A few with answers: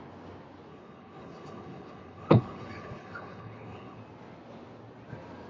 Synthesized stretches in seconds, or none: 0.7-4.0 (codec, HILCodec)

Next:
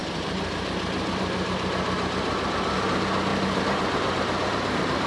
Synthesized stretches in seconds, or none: 3.3-5.1 (vocoder, BigVGAN v2)

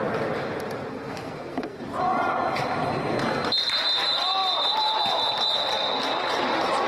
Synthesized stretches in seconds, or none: 0.9-1.8 (codec, SNAC)